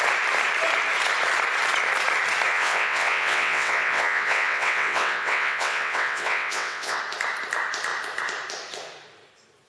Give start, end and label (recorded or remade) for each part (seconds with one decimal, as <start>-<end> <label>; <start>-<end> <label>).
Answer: 0.0-2.5 recorded; 2.5-7.0 remade; 7.0-9.7 recorded